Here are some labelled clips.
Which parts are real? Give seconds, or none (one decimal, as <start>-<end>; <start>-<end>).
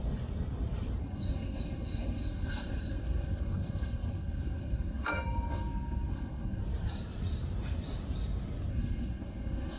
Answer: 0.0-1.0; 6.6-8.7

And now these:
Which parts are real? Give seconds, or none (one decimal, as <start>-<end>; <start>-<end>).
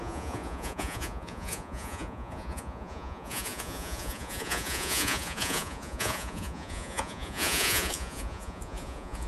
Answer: none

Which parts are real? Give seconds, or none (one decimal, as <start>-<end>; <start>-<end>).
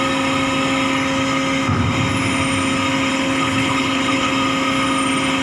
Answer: 0.0-3.1; 4.3-5.4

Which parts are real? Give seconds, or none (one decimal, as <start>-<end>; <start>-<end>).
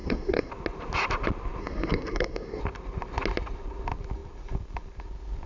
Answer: 0.5-1.6; 2.6-5.5